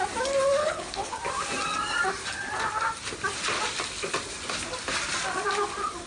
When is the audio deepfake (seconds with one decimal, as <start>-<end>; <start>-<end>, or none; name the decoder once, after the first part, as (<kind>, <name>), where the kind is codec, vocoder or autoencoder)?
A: 0.6-1.2 (codec, HILCodec)